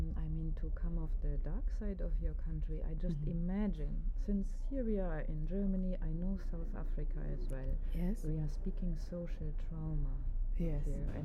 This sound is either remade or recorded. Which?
recorded